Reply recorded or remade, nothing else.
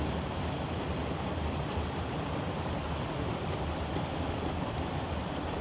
recorded